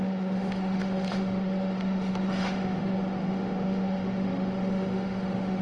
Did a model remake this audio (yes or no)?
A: yes